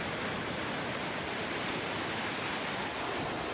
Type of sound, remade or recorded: recorded